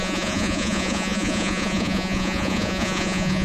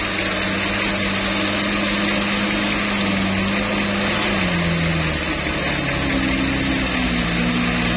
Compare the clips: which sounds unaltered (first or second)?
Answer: second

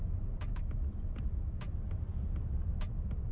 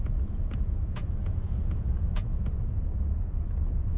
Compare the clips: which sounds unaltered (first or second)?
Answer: first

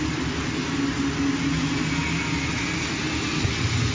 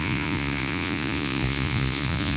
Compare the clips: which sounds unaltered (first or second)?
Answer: first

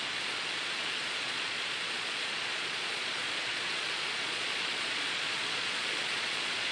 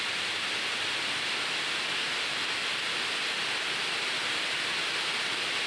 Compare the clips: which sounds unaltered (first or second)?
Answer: second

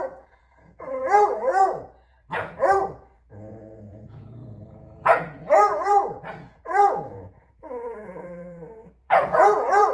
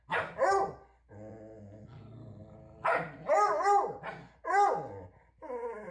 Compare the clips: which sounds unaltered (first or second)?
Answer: second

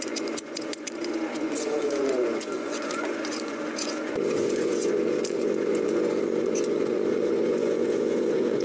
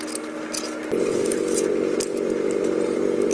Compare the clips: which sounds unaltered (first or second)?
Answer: second